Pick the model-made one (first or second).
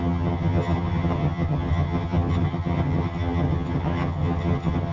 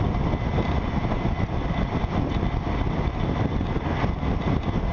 first